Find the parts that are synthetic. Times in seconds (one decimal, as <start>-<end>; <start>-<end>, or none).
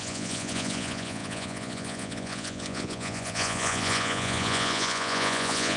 0.0-5.8